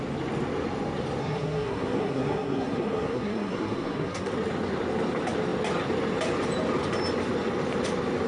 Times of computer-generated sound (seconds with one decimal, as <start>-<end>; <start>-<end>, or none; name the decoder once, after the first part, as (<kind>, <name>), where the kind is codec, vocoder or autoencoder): 1.2-4.3 (codec, SNAC)

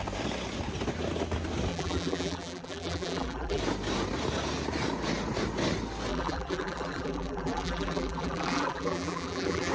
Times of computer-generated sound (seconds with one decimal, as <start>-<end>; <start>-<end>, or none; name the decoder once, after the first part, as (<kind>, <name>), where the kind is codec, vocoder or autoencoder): 1.7-3.6 (vocoder, BigVGAN v2); 6.1-9.7

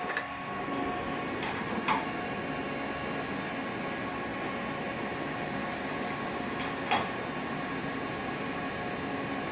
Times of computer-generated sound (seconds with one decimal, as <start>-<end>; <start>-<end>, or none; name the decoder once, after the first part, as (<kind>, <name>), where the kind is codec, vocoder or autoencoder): none